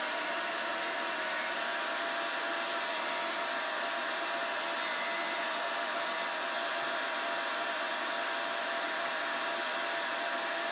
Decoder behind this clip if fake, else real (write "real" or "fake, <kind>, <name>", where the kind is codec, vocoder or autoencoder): real